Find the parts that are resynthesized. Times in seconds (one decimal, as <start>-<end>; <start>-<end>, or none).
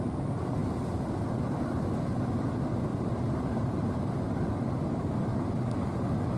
0.6-1.1; 2.9-4.5